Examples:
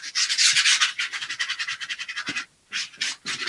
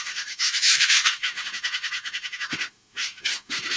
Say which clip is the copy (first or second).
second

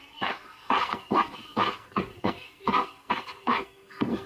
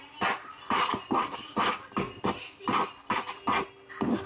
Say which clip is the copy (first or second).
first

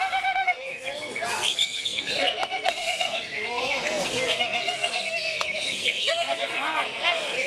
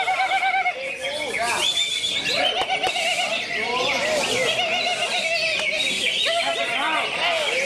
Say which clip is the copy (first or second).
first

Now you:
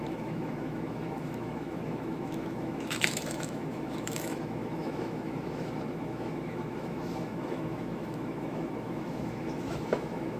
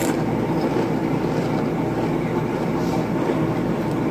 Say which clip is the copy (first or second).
first